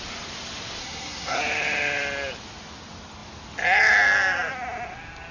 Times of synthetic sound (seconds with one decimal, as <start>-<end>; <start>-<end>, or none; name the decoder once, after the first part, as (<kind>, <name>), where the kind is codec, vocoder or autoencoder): 0.8-1.4 (codec, SNAC)